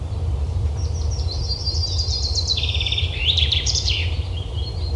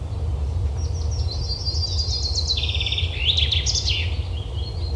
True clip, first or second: second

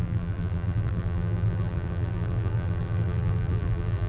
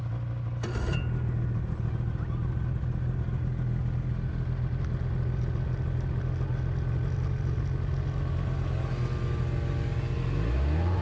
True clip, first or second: second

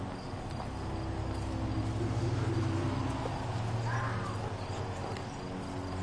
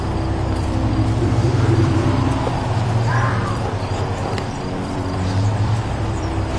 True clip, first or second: first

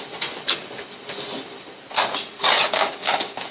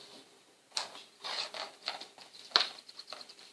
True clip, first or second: first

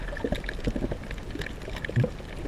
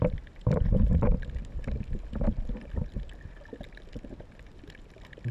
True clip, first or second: first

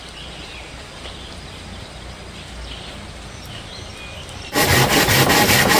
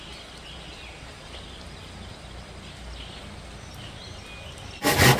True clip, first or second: second